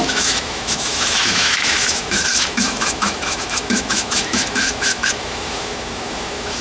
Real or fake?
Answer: fake